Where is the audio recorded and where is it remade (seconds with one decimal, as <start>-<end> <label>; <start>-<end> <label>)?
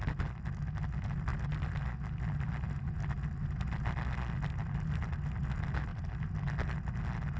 0.0-7.4 recorded